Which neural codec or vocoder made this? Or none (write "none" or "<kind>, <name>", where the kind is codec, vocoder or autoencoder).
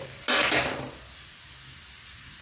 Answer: none